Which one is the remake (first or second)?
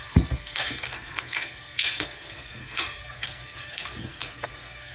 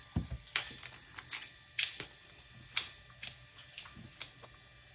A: first